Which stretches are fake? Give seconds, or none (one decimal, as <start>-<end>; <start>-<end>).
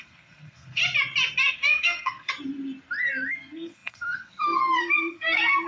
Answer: 0.0-0.8; 1.5-2.3; 3.3-5.7